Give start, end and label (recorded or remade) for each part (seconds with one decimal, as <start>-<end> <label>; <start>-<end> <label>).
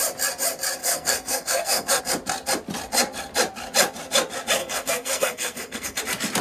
0.0-0.8 recorded; 0.8-2.0 remade; 2.0-4.6 recorded; 4.6-6.0 remade; 6.0-6.4 recorded